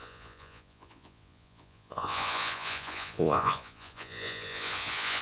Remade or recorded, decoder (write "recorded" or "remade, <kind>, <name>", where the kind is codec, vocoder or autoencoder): remade, vocoder, Vocos